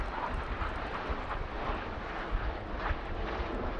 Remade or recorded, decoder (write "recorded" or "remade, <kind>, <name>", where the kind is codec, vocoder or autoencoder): recorded